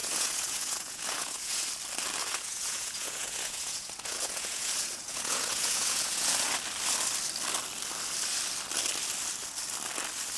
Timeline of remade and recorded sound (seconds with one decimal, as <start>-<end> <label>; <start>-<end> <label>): 0.0-1.6 remade; 1.6-2.2 recorded; 2.2-6.5 remade; 6.5-10.4 recorded